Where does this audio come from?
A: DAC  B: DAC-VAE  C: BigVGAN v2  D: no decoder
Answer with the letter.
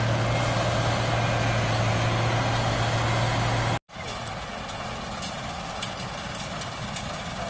D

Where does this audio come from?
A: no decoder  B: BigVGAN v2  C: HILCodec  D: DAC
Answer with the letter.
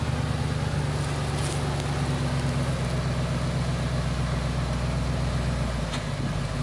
A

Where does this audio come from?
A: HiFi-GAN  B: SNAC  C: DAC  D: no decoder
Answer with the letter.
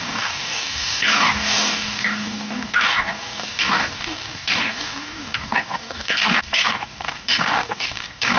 C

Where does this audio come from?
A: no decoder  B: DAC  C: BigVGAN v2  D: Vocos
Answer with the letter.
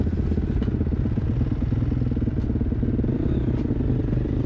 A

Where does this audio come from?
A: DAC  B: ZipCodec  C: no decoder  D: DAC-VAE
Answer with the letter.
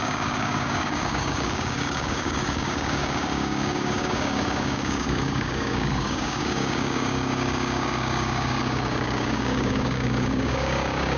A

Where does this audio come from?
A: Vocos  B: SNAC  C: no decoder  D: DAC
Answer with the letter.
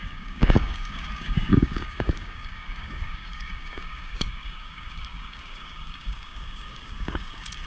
D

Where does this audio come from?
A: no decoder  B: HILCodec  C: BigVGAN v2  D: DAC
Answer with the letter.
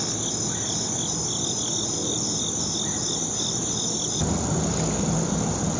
A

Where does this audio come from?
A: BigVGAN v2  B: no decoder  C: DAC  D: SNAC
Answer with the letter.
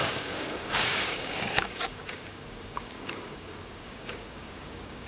C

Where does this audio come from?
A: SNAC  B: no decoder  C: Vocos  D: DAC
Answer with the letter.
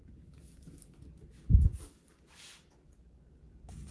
D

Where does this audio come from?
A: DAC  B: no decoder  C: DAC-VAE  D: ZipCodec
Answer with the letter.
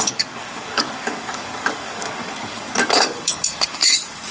A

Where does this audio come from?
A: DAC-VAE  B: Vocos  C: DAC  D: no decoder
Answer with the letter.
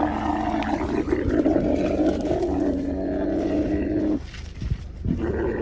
D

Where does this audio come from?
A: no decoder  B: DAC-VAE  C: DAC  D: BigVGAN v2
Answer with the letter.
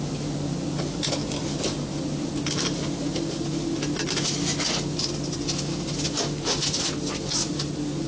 A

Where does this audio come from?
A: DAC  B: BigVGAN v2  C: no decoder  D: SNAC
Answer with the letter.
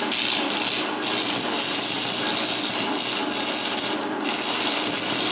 C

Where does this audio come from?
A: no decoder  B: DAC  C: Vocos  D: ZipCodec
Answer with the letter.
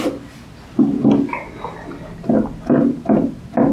A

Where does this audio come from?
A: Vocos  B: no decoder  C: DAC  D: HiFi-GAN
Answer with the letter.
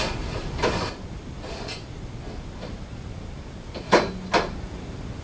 B